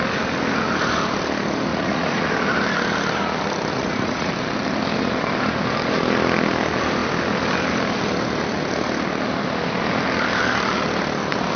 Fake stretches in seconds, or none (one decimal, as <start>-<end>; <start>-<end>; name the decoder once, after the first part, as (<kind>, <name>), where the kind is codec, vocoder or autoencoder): 1.7-2.3 (vocoder, Vocos); 3.7-4.3